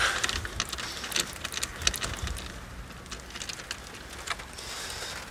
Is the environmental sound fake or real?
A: real